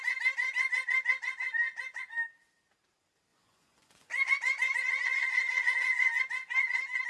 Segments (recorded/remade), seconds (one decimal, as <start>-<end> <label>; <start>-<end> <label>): 0.0-3.3 recorded; 3.3-4.3 remade; 4.3-7.1 recorded